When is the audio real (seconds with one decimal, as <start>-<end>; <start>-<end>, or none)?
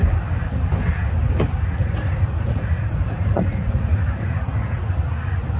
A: 0.0-1.8; 4.9-5.6